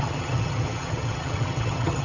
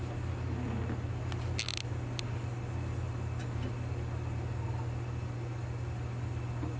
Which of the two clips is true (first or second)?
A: second